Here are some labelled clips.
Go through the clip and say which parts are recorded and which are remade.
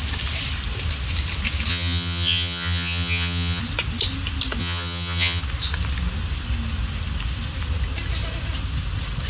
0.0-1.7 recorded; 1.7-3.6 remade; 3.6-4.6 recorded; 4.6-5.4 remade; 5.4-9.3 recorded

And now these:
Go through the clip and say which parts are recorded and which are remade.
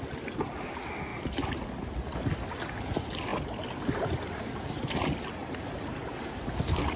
0.0-7.0 recorded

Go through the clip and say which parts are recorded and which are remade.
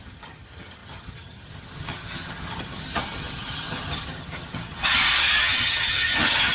0.0-4.8 remade; 4.8-5.4 recorded; 5.4-6.5 remade